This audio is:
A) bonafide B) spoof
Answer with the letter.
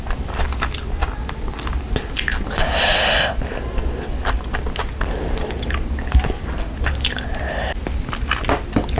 A